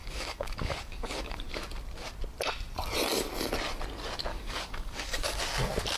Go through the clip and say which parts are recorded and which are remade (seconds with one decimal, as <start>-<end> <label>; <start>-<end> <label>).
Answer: 0.0-1.4 remade; 1.4-4.3 recorded; 4.3-5.4 remade; 5.4-6.0 recorded